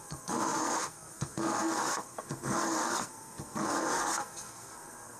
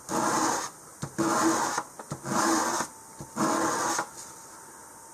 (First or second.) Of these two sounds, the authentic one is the second